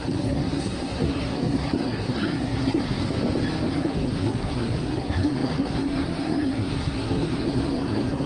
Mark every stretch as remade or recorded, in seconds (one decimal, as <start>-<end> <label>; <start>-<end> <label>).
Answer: 0.0-3.0 remade; 3.0-3.7 recorded; 3.7-8.3 remade

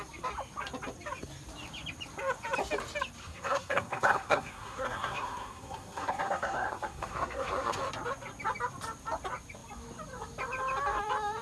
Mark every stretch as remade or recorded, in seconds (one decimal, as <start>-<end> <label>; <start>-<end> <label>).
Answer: 0.0-3.2 recorded; 3.2-7.8 remade; 7.8-11.4 recorded

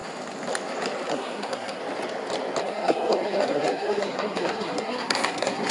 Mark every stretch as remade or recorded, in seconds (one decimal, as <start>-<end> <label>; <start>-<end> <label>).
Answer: 0.0-1.1 recorded; 1.1-1.8 remade; 1.8-2.6 recorded; 2.6-5.7 remade

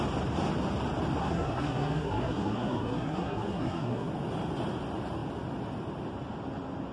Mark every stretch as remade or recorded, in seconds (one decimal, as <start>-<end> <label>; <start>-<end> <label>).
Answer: 0.0-1.2 recorded; 1.2-4.1 remade; 4.1-6.9 recorded

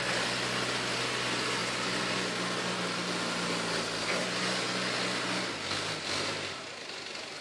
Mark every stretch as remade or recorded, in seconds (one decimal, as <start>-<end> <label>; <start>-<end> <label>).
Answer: 0.0-7.4 recorded

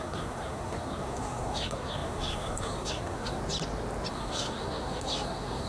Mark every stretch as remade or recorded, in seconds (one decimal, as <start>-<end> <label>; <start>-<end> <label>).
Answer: 0.0-3.4 remade; 3.4-4.1 recorded; 4.1-5.7 remade

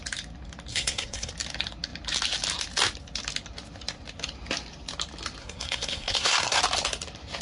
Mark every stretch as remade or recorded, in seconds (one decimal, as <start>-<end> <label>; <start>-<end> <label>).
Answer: 0.0-0.7 recorded; 0.7-1.3 remade; 1.3-5.4 recorded; 5.4-6.6 remade; 6.6-7.4 recorded